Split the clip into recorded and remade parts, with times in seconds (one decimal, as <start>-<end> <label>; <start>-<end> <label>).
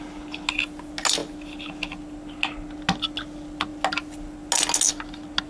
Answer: 0.0-5.5 recorded